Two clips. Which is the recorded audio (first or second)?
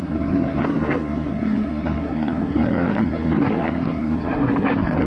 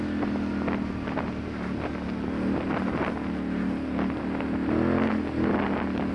second